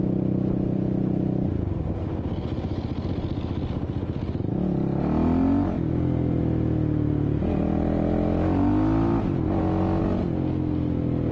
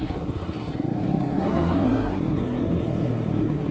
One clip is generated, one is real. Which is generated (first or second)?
second